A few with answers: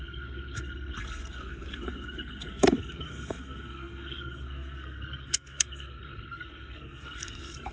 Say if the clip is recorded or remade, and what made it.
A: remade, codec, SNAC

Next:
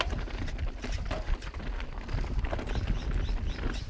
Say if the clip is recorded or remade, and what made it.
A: recorded